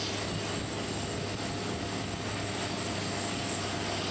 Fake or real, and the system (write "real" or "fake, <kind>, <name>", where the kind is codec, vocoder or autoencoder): real